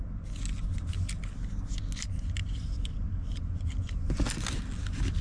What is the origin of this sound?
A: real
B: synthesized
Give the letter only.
A